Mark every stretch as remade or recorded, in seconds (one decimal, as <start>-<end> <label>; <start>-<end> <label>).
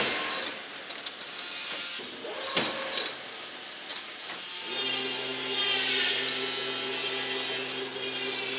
0.0-8.6 recorded